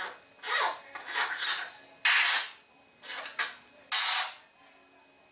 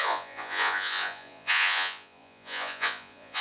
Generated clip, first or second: second